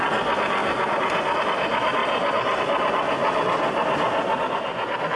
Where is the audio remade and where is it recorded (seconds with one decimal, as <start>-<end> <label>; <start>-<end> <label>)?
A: 0.0-2.0 recorded; 2.0-2.6 remade; 2.6-3.2 recorded; 3.2-4.5 remade; 4.5-5.2 recorded